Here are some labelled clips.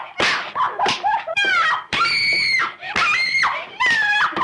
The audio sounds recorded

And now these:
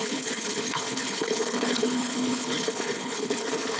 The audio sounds remade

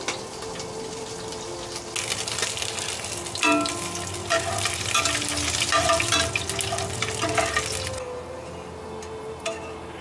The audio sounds recorded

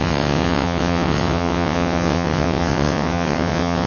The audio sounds remade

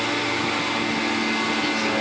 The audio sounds recorded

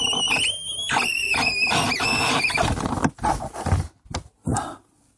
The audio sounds recorded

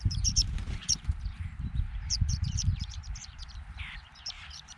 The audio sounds remade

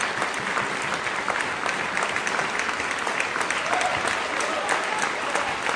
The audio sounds recorded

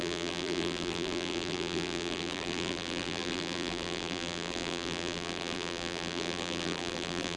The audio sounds remade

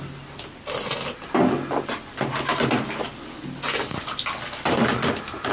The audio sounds recorded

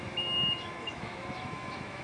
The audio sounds remade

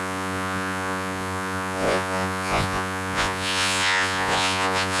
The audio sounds remade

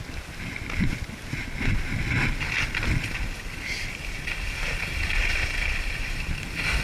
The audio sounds recorded